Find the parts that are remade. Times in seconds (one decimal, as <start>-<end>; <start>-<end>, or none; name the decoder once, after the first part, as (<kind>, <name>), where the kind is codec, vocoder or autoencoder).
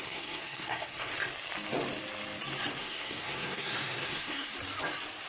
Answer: 0.0-1.1 (codec, SNAC); 2.8-4.5